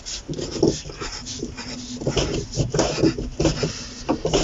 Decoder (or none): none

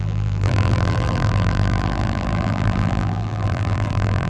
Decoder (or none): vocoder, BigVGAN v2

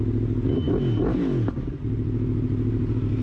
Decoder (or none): none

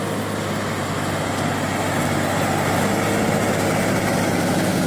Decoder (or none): none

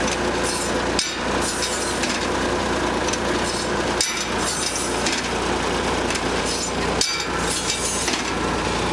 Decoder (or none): none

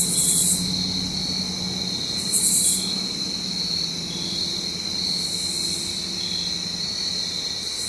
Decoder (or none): none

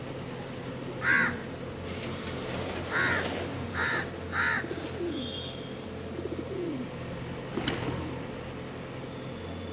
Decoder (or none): none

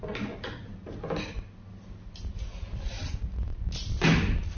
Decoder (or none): none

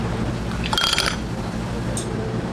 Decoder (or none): none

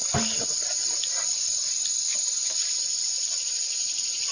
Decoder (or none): none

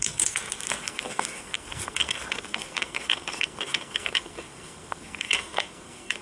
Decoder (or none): codec, SNAC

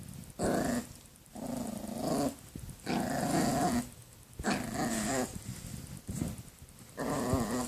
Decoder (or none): none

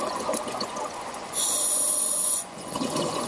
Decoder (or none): vocoder, Vocos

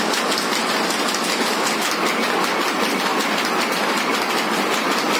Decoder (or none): none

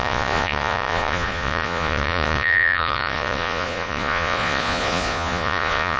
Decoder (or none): vocoder, Vocos